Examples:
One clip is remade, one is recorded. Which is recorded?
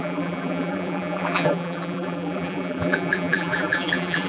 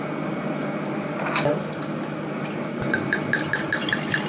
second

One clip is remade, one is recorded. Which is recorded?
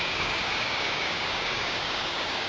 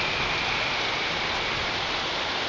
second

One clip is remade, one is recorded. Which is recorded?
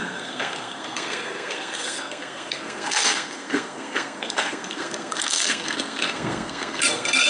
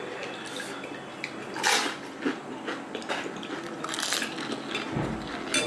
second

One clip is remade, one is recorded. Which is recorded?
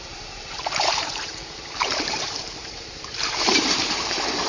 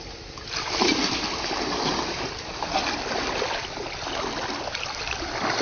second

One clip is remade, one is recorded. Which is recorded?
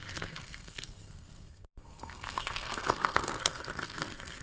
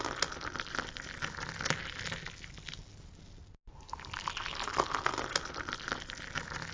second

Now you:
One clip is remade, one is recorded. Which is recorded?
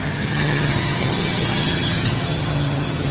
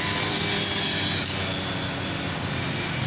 second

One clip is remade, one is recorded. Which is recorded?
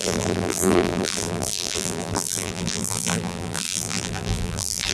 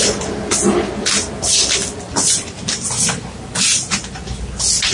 second